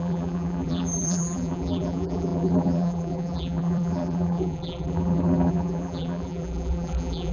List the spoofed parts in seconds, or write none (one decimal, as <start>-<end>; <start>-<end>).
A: 0.0-7.3

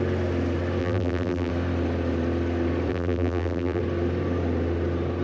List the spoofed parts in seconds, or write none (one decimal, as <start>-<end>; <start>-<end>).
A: 0.8-1.5; 2.9-3.8